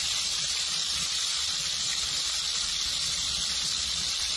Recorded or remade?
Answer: remade